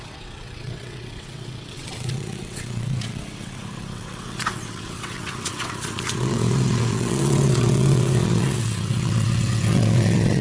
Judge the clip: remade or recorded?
remade